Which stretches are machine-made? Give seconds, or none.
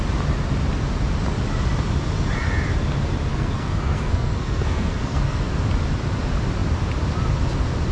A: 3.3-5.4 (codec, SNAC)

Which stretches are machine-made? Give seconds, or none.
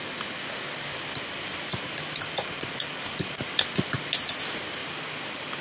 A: 1.7-3.6 (vocoder, BigVGAN v2); 4.8-5.6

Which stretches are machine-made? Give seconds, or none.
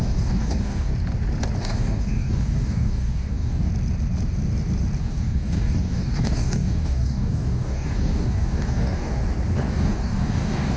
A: 0.0-0.9 (codec, DAC); 1.6-3.7; 5.0-9.2; 9.7-10.8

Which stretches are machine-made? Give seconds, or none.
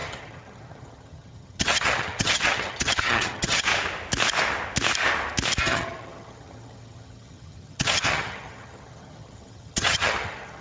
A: 0.0-3.7 (vocoder, HiFi-GAN); 5.6-10.6